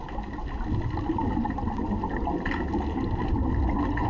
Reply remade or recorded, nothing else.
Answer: recorded